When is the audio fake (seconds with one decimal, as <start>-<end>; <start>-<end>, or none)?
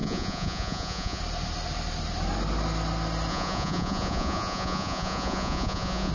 0.0-1.2; 3.3-6.1